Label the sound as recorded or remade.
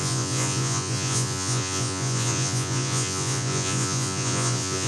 remade